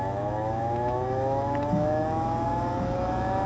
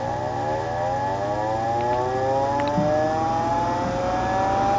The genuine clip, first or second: second